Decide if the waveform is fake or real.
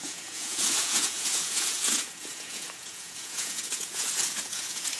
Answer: fake